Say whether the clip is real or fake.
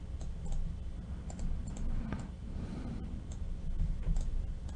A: real